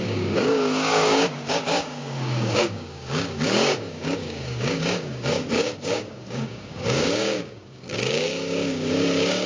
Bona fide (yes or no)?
no